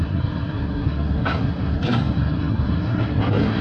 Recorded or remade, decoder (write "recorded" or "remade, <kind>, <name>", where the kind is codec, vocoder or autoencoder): remade, codec, SNAC